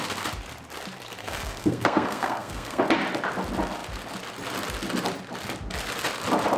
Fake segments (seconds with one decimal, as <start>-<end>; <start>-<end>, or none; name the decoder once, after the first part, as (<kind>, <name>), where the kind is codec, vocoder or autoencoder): 1.2-2.8 (codec, SNAC)